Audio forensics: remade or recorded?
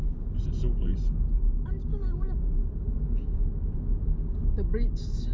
recorded